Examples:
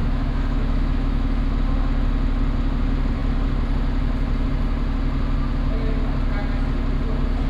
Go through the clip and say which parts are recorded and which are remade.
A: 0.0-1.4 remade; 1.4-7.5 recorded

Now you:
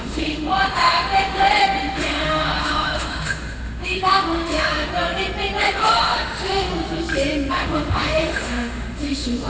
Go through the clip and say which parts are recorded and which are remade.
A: 0.0-4.9 remade; 4.9-5.6 recorded; 5.6-6.7 remade; 6.7-7.5 recorded; 7.5-9.5 remade

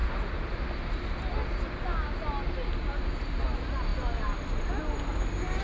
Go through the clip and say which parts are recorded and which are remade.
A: 0.0-5.6 recorded

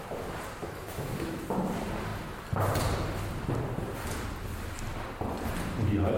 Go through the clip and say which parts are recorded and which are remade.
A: 0.0-0.6 recorded; 0.6-1.4 remade; 1.4-6.2 recorded

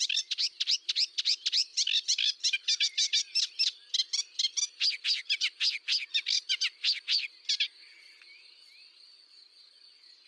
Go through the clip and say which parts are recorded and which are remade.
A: 0.0-10.3 recorded

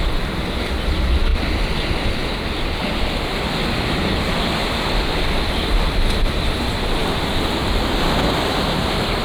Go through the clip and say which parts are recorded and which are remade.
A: 0.0-9.2 recorded